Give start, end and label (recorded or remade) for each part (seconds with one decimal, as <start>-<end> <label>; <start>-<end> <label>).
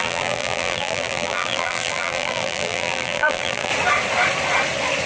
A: 0.0-3.7 remade; 3.7-5.1 recorded